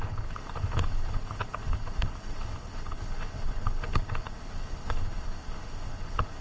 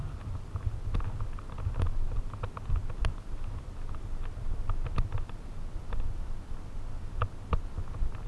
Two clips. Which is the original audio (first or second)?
second